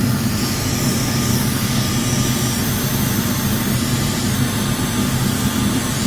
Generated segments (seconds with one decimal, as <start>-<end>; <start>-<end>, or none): 0.9-1.8; 5.0-5.6